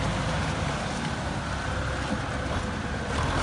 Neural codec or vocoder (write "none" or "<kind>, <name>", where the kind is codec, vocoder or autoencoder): none